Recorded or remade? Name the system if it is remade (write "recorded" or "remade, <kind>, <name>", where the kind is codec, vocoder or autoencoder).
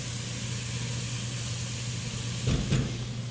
recorded